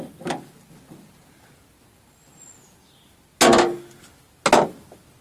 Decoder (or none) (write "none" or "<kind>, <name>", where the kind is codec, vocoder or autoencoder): none